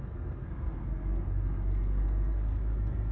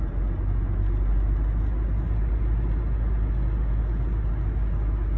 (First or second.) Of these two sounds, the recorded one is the second